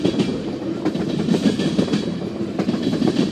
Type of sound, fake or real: fake